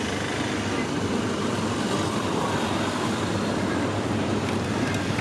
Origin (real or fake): fake